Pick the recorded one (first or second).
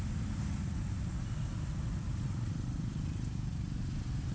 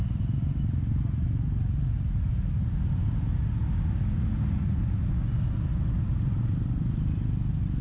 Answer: second